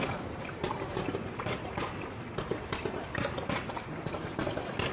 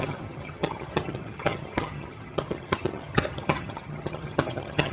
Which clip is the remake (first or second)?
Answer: second